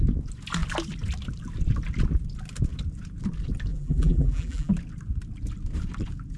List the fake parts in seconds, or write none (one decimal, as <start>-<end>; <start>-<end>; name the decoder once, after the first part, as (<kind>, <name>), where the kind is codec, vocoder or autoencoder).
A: 3.7-4.7 (vocoder, BigVGAN v2)